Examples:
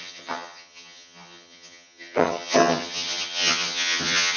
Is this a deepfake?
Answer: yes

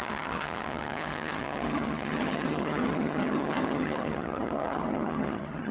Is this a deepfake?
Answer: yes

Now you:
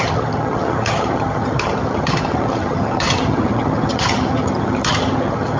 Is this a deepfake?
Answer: yes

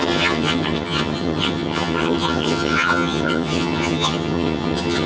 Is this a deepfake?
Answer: yes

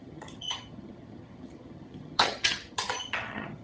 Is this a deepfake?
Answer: yes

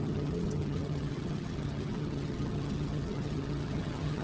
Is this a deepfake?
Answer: yes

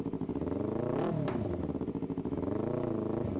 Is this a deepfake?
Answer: no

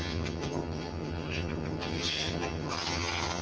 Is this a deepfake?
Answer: yes